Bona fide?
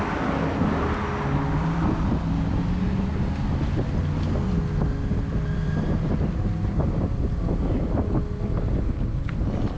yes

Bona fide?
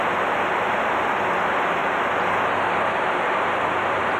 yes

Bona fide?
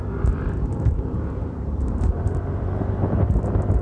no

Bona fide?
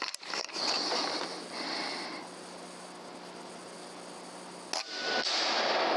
yes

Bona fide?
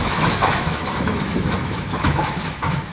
no